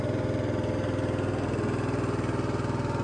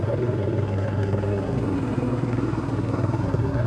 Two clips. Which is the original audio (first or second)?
first